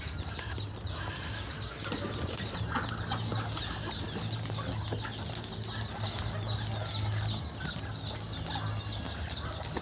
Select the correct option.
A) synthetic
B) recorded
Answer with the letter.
B